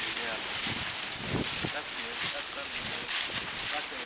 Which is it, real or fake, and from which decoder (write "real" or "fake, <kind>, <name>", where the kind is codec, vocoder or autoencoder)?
real